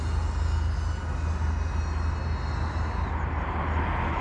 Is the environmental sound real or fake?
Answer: real